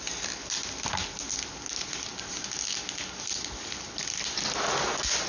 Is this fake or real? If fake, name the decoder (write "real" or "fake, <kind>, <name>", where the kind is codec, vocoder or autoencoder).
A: real